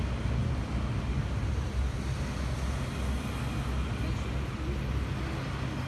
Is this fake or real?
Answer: real